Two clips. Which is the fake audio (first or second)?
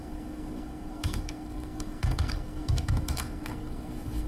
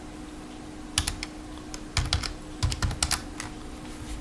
first